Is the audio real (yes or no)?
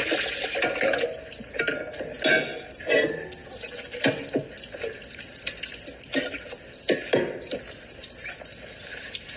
yes